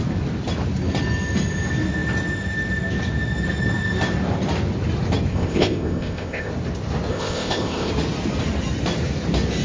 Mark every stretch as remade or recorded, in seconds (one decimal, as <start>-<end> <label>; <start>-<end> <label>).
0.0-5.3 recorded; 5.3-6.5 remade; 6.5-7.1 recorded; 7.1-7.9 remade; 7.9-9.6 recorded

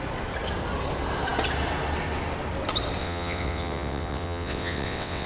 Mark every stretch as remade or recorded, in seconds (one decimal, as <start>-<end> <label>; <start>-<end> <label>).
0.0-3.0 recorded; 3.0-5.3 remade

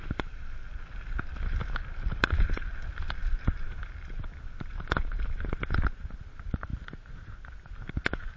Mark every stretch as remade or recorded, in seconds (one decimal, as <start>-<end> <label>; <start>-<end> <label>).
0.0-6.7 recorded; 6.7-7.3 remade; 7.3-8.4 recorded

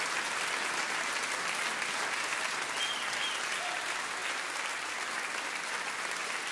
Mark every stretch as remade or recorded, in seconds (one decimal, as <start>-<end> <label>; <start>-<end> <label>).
0.0-6.5 recorded

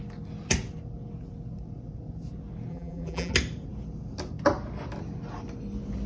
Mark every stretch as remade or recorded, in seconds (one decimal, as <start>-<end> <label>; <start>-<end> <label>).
0.0-2.7 recorded; 2.7-3.3 remade; 3.3-6.1 recorded